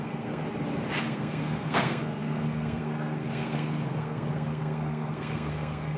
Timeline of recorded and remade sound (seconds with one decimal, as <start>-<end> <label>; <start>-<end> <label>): 0.0-0.4 remade; 0.4-1.0 recorded; 1.0-6.0 remade